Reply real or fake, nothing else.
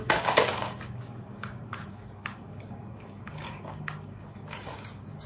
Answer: fake